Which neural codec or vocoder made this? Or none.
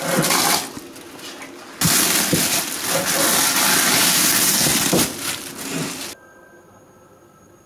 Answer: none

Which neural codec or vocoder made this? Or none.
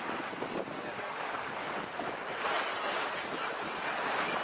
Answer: none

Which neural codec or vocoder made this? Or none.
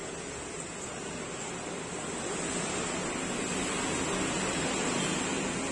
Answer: none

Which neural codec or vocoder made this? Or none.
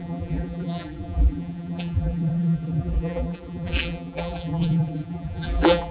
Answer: vocoder, BigVGAN v2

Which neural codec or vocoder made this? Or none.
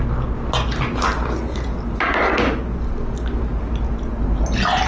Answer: none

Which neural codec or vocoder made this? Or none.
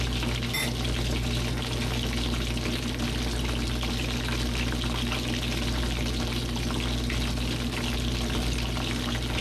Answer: none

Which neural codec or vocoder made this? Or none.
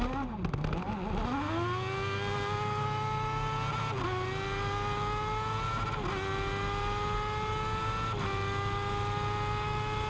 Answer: none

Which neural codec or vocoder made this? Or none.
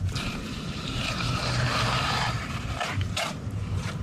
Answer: vocoder, BigVGAN v2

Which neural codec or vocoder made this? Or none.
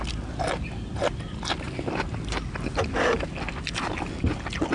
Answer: none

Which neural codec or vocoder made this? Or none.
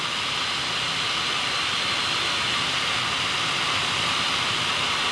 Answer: none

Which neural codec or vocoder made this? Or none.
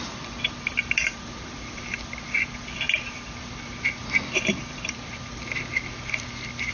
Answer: vocoder, BigVGAN v2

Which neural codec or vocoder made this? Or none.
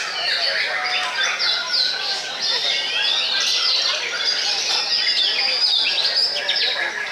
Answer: none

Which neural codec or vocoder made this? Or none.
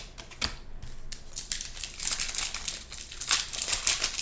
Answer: none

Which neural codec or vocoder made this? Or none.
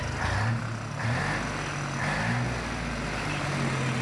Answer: none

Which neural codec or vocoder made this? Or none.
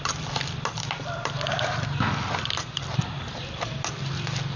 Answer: none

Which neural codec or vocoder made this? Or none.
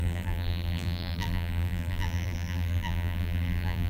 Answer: vocoder, BigVGAN v2